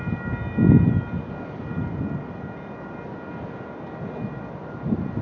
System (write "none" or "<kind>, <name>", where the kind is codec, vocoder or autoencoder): none